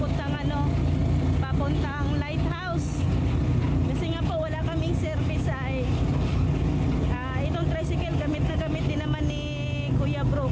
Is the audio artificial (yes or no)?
no